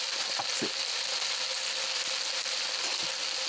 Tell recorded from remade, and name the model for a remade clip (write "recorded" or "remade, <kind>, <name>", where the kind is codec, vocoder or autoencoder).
recorded